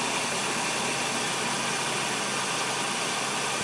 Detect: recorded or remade recorded